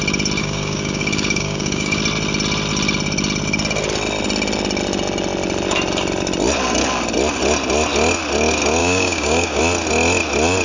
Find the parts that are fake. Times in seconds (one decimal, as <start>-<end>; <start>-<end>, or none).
0.4-2.0; 8.8-9.6